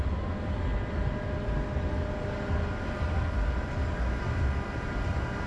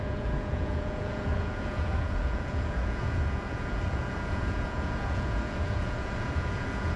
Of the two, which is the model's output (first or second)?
second